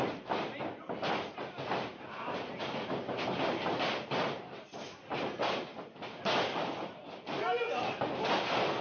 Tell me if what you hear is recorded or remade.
recorded